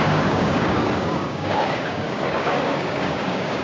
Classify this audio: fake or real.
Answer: fake